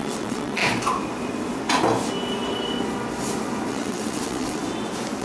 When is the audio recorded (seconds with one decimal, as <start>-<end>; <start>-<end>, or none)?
0.6-3.7; 4.6-5.2